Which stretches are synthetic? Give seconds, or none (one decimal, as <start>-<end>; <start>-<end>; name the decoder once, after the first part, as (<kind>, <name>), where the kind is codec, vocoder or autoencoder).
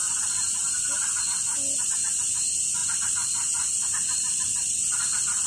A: 2.8-5.0 (vocoder, BigVGAN v2)